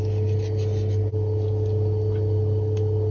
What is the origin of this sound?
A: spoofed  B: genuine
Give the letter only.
B